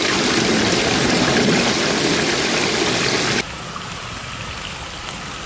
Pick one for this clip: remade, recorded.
recorded